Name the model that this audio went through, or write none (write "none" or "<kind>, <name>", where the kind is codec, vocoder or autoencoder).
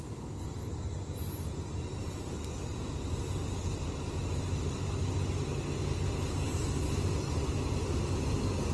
none